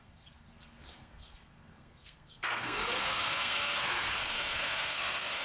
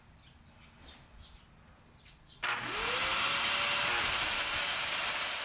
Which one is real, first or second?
second